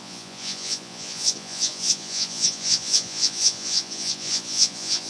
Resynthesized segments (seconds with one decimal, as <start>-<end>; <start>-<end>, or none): 0.0-5.1